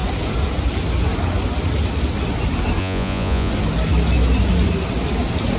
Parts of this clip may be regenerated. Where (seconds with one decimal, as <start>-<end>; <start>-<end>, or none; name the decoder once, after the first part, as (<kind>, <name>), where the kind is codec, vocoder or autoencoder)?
2.8-3.5 (vocoder, Vocos)